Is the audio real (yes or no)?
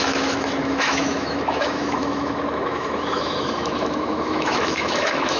no